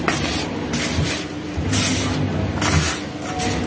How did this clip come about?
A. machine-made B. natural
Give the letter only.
B